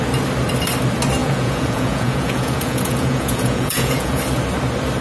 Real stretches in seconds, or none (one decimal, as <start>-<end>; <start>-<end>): 0.0-1.2; 4.2-5.0